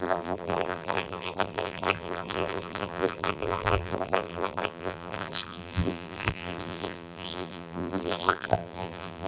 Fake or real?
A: fake